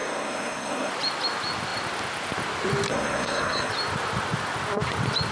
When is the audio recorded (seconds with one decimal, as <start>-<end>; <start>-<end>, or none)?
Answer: 0.9-2.9; 3.7-5.3